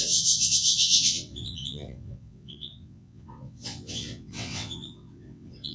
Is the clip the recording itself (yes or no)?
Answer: no